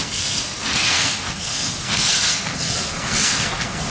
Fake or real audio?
fake